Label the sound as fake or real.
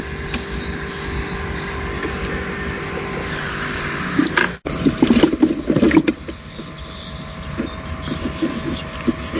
real